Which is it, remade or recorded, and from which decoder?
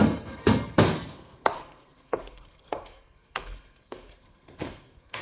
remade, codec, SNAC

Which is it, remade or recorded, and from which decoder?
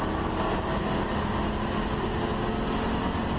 recorded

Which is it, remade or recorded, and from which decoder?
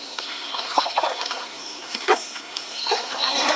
remade, codec, SNAC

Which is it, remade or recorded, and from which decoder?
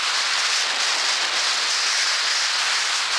recorded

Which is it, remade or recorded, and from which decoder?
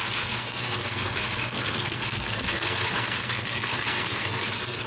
remade, codec, SNAC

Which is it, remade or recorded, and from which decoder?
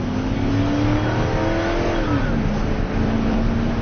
recorded